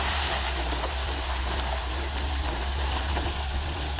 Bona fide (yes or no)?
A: no